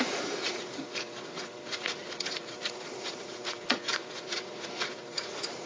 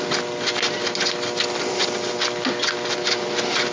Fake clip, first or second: first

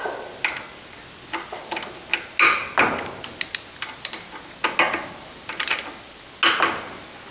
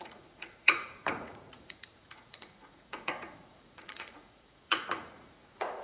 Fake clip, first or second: second